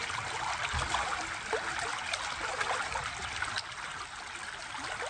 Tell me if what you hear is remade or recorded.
recorded